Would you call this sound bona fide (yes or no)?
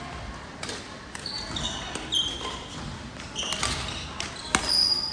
yes